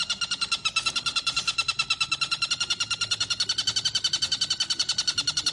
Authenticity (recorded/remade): recorded